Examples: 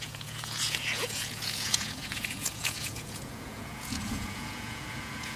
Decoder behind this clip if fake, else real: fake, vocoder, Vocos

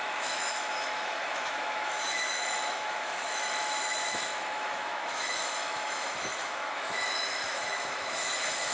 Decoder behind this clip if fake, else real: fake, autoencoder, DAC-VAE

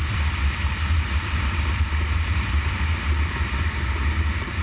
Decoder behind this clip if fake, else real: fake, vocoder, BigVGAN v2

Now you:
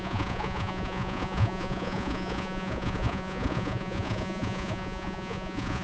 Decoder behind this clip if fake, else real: fake, vocoder, Vocos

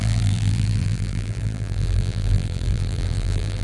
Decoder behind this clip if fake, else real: fake, vocoder, BigVGAN v2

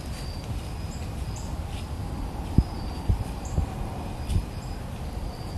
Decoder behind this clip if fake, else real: real